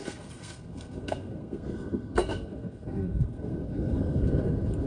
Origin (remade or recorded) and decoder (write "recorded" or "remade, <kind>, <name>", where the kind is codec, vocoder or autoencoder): remade, codec, SNAC